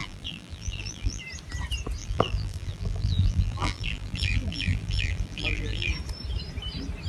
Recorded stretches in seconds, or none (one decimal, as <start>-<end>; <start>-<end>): 1.2-2.0; 5.9-7.1